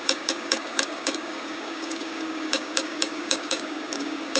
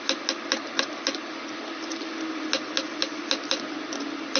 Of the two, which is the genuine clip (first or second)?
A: second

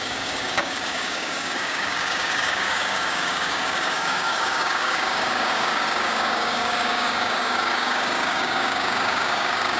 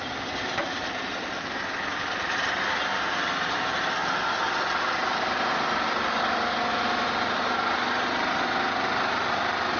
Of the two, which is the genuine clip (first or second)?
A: second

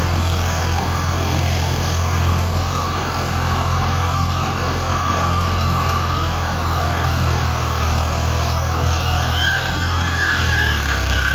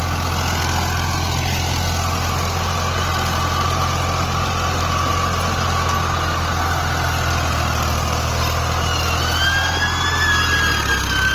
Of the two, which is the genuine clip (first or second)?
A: second